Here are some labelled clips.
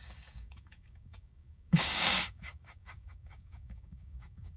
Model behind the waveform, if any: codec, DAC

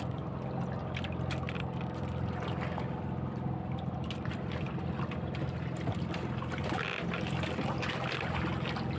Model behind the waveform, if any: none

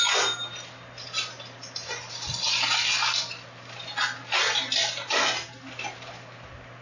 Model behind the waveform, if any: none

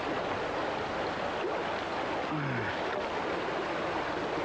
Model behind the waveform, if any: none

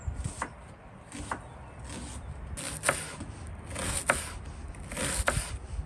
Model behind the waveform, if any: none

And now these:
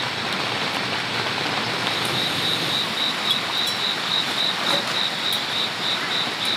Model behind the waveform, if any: none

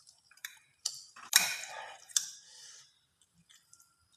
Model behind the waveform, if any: vocoder, BigVGAN v2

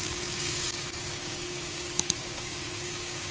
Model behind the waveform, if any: codec, DAC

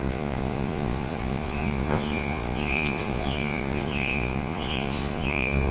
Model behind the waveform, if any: vocoder, Vocos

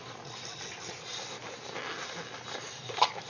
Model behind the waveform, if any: none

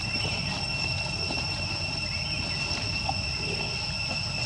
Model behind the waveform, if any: none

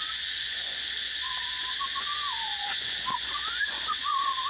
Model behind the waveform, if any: vocoder, Vocos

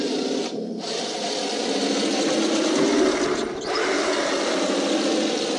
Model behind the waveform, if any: none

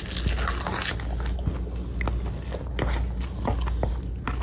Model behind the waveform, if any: none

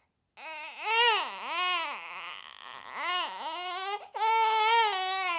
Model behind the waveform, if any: none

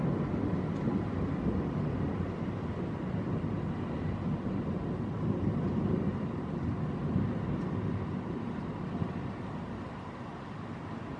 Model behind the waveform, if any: none